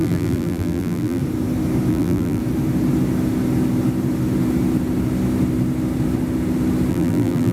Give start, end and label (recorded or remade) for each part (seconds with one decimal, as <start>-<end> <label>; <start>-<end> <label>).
0.0-1.2 remade; 1.2-1.9 recorded; 1.9-2.4 remade; 2.4-6.9 recorded; 6.9-7.5 remade